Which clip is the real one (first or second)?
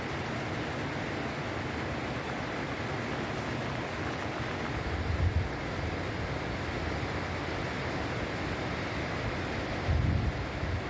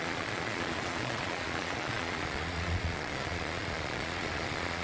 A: first